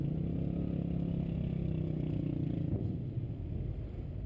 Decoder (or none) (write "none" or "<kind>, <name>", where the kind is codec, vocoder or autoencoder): none